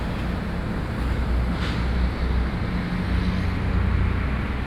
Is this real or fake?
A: real